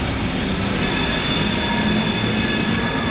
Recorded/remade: recorded